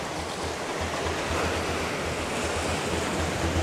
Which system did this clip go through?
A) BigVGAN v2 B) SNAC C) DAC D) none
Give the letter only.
D